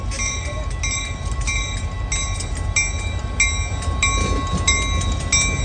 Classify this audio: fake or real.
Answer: real